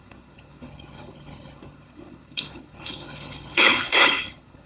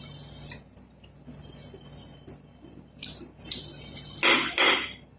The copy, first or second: first